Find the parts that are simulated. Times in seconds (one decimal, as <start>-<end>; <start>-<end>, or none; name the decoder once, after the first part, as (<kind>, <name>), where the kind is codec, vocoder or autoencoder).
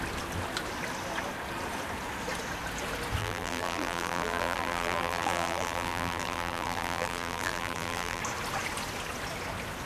3.2-8.2 (vocoder, BigVGAN v2)